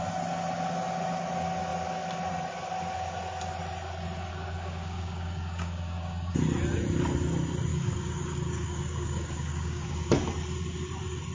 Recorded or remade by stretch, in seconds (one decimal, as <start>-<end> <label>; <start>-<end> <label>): 0.0-4.3 recorded; 4.3-6.3 remade; 6.3-7.7 recorded; 7.7-10.1 remade; 10.1-11.3 recorded